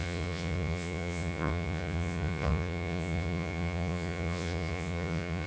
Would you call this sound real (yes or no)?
no